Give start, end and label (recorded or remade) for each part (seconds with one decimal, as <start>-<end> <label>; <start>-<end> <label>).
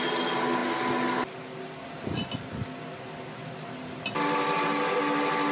0.0-5.5 recorded